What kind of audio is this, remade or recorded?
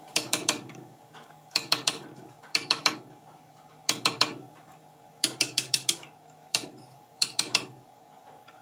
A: remade